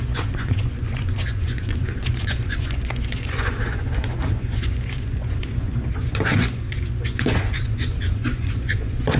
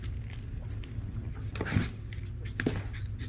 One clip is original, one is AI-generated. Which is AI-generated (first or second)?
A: first